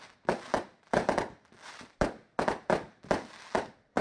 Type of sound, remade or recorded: recorded